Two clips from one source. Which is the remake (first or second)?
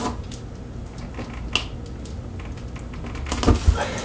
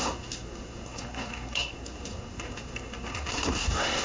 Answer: second